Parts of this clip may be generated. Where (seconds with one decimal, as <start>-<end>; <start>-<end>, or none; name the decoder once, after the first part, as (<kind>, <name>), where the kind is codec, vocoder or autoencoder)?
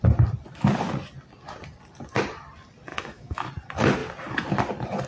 2.9-3.5 (autoencoder, DAC-VAE)